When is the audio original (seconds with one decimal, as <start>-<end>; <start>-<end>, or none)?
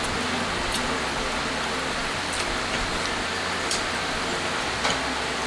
0.0-5.5